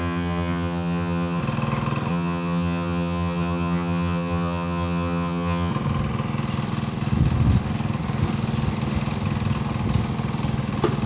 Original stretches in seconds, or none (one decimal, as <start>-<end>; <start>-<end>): 1.4-2.1; 5.7-11.1

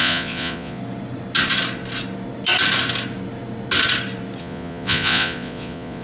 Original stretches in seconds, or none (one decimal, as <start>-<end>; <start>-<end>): 0.8-4.4